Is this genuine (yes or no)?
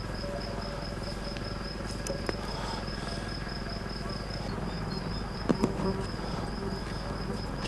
yes